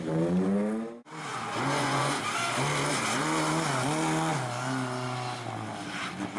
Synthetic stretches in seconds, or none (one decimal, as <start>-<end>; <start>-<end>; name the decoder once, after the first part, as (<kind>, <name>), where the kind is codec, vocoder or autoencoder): 1.3-2.2 (vocoder, Vocos)